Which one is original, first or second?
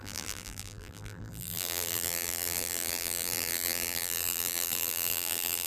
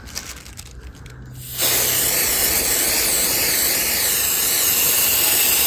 second